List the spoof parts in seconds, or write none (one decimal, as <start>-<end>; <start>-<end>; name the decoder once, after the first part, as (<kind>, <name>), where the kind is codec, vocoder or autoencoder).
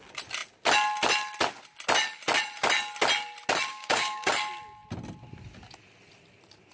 3.7-4.3 (codec, DAC)